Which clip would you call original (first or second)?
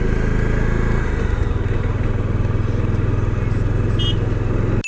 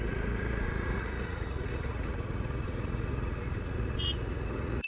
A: first